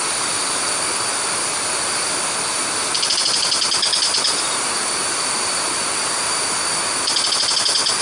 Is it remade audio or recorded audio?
recorded